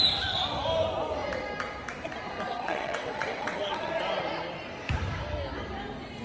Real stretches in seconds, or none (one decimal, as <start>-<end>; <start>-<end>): 0.0-2.5; 3.9-6.2